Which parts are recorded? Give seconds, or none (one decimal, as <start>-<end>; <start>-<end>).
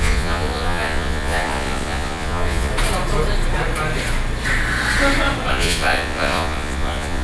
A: 2.7-5.5